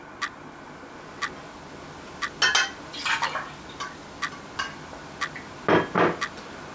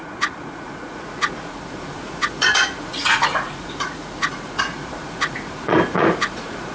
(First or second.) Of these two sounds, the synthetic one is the second